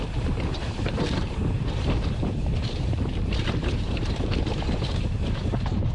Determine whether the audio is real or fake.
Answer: fake